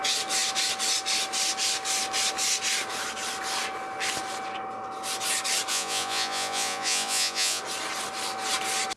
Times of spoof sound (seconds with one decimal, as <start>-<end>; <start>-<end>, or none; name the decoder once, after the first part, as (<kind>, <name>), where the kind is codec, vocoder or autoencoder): 5.7-7.6 (vocoder, Vocos)